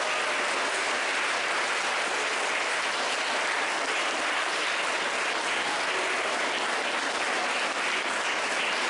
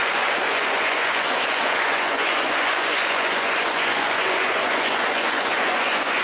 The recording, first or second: first